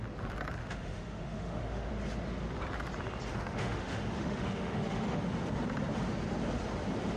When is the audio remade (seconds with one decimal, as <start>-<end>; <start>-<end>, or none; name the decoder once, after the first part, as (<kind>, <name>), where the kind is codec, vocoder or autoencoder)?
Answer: 0.6-1.9 (autoencoder, DAC-VAE); 3.3-5.2